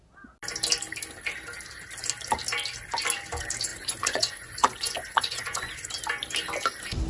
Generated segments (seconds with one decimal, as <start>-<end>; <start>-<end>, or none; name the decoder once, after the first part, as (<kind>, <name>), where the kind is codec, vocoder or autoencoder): 3.7-5.9 (vocoder, Vocos)